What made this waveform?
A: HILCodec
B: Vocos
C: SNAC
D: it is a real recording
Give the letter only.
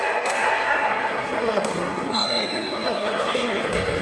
C